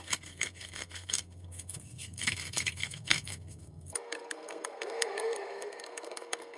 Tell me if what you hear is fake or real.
fake